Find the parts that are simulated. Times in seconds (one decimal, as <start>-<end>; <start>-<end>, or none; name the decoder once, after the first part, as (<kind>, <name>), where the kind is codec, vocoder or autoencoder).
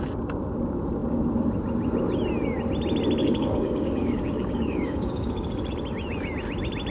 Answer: 3.2-5.7 (codec, DAC)